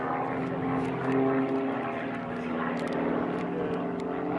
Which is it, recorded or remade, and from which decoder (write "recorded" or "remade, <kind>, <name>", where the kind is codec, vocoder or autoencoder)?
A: recorded